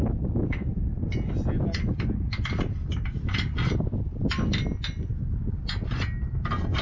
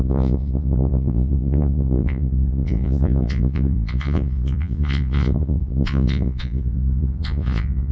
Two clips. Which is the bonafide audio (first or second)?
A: first